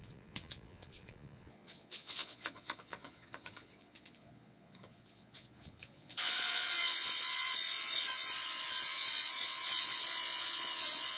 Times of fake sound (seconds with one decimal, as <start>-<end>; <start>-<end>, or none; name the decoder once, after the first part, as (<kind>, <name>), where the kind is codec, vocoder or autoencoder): 0.0-11.2 (vocoder, Vocos)